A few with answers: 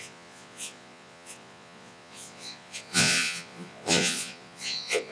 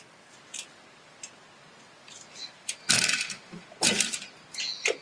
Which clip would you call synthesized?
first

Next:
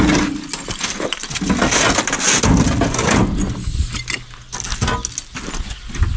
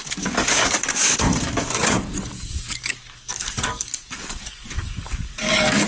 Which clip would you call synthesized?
second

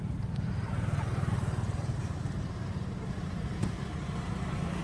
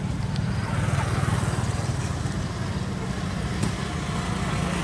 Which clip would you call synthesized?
first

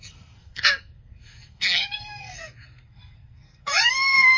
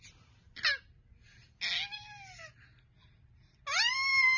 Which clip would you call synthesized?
first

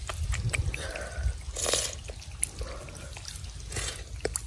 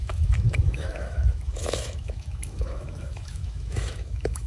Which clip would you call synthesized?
second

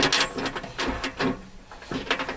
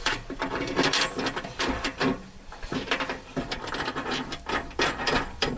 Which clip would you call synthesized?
second